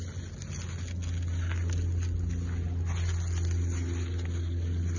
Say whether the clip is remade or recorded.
recorded